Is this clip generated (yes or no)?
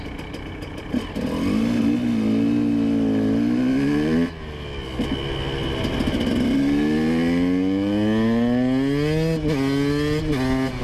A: no